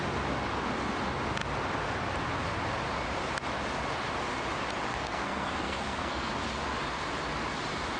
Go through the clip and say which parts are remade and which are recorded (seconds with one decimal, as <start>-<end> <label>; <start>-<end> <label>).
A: 0.0-4.9 recorded; 4.9-6.3 remade; 6.3-8.0 recorded